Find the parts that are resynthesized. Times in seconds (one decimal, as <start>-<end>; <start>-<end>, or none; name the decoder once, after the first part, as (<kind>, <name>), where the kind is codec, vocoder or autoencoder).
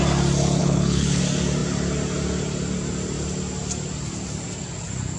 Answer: 0.6-1.2 (codec, HILCodec)